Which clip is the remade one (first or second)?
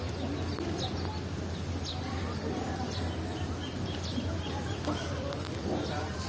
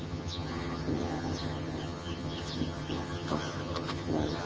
second